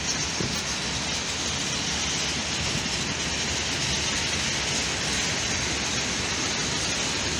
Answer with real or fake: real